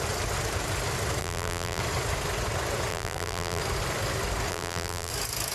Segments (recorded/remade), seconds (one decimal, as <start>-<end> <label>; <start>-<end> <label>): 0.0-1.2 recorded; 1.2-1.8 remade; 1.8-2.9 recorded; 2.9-3.6 remade; 3.6-4.5 recorded; 4.5-5.1 remade; 5.1-5.5 recorded